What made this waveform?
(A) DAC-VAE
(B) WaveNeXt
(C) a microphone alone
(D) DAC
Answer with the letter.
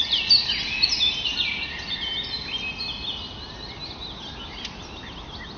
C